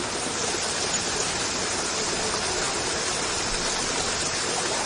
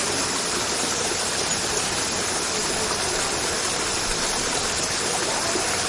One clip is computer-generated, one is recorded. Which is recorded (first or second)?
first